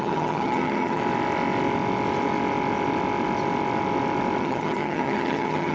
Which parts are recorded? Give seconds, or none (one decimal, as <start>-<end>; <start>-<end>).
1.0-4.4